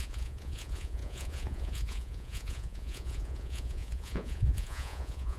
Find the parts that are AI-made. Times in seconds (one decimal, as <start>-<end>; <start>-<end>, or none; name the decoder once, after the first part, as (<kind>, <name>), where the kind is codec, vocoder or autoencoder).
0.0-5.4 (vocoder, Vocos)